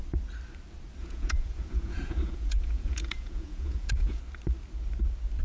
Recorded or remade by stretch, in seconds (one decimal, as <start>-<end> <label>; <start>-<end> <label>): 0.0-1.0 recorded; 1.0-4.2 remade; 4.2-5.4 recorded